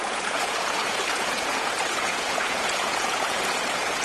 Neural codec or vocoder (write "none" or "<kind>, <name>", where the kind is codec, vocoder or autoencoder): vocoder, Vocos